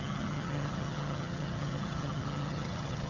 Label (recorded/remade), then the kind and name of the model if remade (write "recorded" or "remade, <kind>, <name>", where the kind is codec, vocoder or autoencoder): remade, vocoder, HiFi-GAN